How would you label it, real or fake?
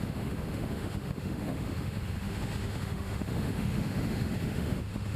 fake